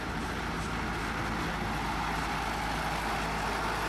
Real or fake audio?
real